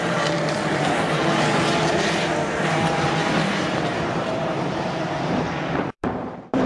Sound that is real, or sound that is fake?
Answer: fake